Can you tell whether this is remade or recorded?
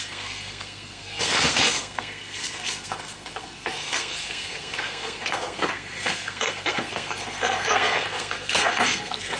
remade